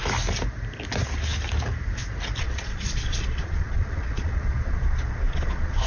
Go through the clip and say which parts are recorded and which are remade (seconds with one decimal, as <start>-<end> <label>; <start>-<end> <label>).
0.0-2.4 recorded; 2.4-5.9 remade